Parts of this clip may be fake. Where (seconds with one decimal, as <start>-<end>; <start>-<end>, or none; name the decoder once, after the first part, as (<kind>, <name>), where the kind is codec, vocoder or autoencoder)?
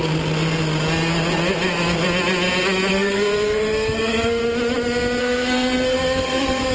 2.9-4.4 (codec, SNAC); 5.2-6.7